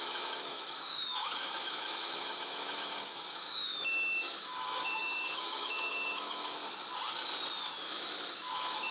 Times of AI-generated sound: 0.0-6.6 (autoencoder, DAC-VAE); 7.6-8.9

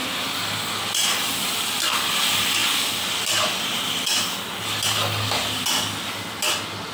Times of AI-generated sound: none

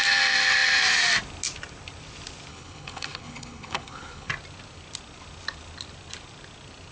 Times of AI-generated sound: 2.5-4.3 (codec, HILCodec)

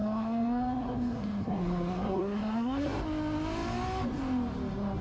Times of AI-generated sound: 0.0-3.0 (codec, SNAC)

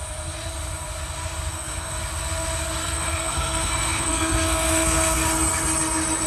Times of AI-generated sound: 1.5-2.0 (codec, SNAC); 2.8-5.3

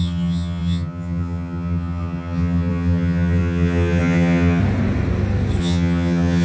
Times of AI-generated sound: 0.0-4.6 (vocoder, HiFi-GAN); 5.6-6.4